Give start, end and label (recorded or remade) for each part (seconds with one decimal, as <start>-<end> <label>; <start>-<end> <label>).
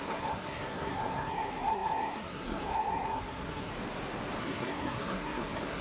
0.0-3.7 remade; 3.7-4.4 recorded; 4.4-5.8 remade